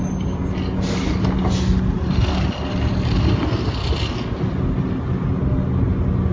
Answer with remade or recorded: recorded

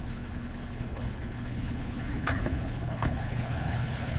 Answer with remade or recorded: remade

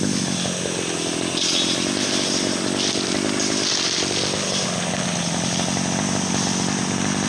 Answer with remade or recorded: recorded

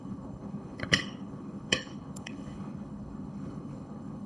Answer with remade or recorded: remade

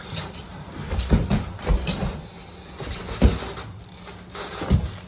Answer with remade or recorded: recorded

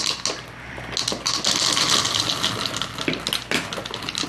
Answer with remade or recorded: recorded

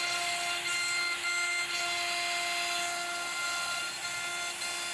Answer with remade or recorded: recorded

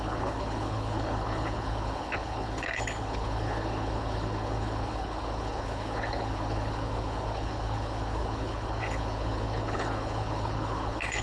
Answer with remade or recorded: remade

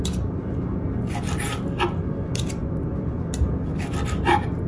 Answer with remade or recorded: recorded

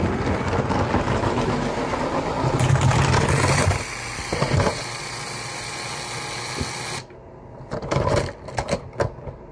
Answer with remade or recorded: recorded